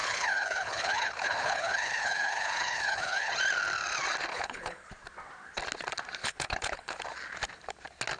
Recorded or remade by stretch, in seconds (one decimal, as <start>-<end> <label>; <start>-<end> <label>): 0.0-3.3 remade; 3.3-4.3 recorded; 4.3-4.9 remade; 4.9-6.2 recorded; 6.2-7.0 remade; 7.0-8.2 recorded